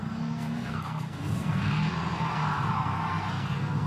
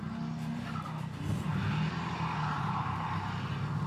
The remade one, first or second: first